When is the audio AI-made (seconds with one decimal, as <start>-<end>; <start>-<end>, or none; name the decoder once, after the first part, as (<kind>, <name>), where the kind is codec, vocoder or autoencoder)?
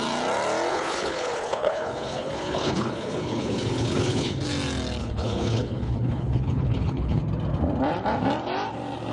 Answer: 0.7-4.4 (codec, HILCodec); 5.0-7.2